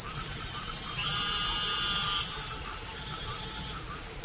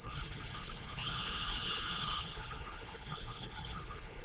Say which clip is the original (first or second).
first